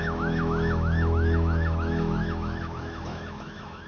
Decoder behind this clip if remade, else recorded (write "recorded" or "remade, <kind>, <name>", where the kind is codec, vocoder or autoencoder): remade, autoencoder, DAC-VAE